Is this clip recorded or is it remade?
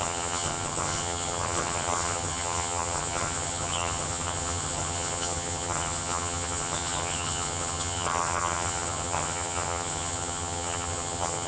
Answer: remade